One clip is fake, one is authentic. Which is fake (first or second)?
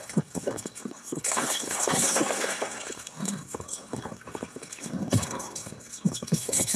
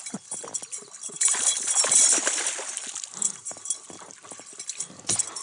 first